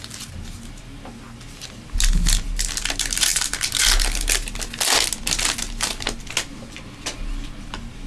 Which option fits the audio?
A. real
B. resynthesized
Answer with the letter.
A